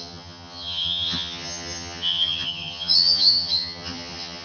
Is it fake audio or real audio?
fake